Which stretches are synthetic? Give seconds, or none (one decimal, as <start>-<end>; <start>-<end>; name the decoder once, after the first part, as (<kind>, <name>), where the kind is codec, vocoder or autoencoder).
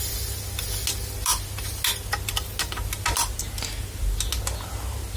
none